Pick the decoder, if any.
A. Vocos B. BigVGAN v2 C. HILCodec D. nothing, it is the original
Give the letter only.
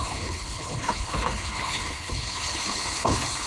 C